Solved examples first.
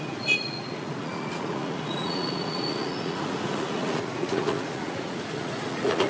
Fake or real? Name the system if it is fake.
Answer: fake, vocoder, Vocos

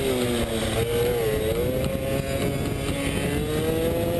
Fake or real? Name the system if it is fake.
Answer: real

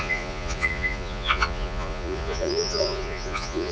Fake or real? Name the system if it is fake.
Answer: fake, vocoder, Vocos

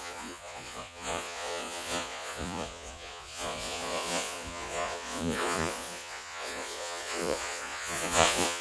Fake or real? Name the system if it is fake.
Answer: fake, vocoder, Vocos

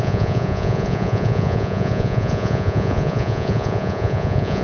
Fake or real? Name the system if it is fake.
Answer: fake, vocoder, Vocos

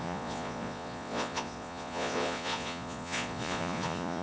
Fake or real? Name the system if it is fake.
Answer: fake, vocoder, Vocos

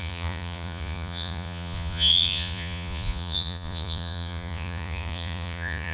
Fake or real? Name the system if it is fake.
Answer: fake, vocoder, Vocos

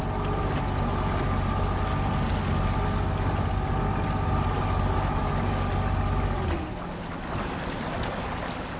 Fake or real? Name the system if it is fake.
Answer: real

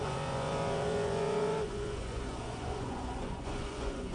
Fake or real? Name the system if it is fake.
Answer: fake, vocoder, Vocos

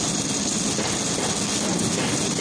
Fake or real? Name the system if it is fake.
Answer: real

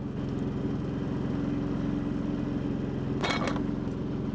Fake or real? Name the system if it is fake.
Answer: real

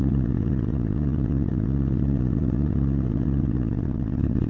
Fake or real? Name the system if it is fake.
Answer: fake, vocoder, Vocos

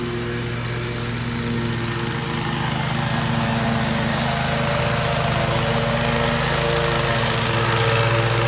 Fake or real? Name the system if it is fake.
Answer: real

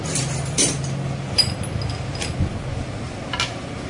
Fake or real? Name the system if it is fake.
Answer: real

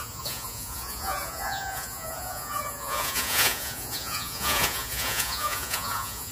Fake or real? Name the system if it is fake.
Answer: fake, vocoder, Vocos